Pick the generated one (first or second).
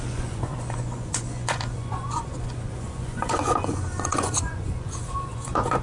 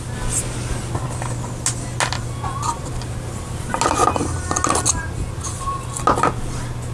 first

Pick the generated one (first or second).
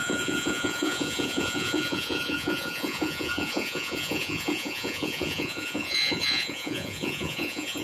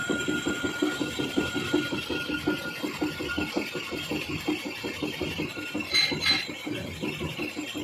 first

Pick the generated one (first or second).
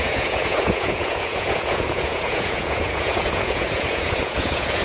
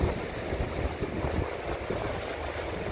first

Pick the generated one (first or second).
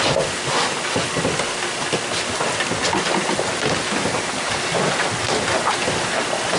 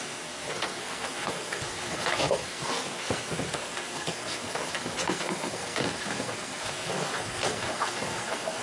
second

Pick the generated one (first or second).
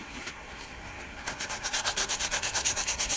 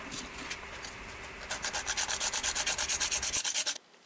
first